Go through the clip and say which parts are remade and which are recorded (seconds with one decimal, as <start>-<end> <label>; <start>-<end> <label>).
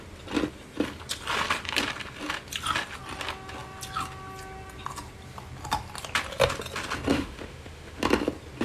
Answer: 0.0-7.1 recorded; 7.1-8.0 remade; 8.0-8.6 recorded